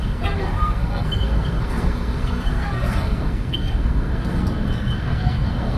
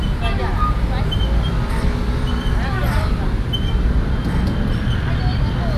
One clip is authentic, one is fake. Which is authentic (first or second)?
second